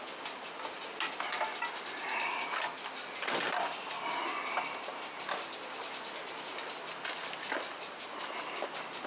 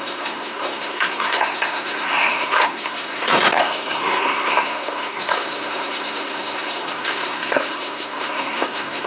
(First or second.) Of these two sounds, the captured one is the first